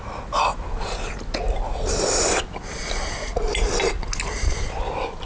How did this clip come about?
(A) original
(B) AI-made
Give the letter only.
A